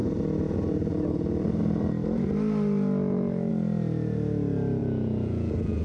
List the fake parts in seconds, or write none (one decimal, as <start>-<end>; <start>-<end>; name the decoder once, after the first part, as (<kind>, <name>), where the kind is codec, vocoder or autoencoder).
4.8-5.8 (vocoder, Vocos)